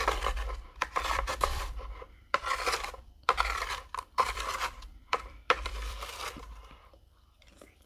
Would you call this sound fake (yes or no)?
yes